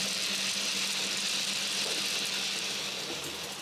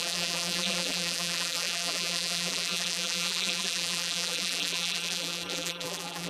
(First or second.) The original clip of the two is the first